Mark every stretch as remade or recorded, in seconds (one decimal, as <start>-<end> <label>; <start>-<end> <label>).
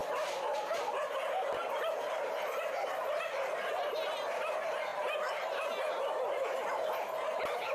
0.0-0.6 remade; 0.6-1.6 recorded; 1.6-2.2 remade; 2.2-4.9 recorded; 4.9-6.9 remade; 6.9-7.7 recorded